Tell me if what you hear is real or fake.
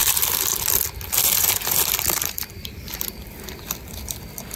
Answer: fake